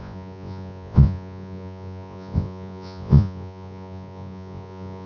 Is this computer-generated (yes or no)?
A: yes